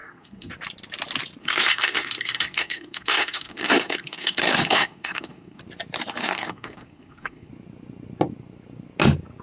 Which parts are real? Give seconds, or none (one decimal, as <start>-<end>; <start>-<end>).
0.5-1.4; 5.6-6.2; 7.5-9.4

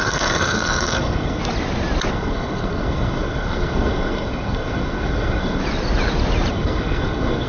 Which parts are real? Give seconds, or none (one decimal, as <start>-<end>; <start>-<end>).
1.4-2.1; 5.6-6.5

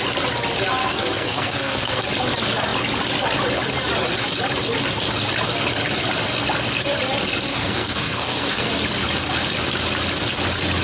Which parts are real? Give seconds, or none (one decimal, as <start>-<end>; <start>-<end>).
0.0-0.8; 2.0-7.5; 8.7-10.8

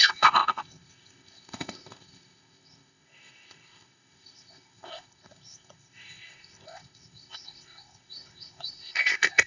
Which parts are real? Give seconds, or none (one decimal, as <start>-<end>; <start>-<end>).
none